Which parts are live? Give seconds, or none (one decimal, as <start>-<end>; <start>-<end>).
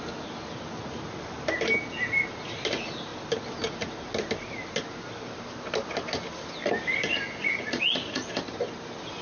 0.0-7.1; 8.3-9.2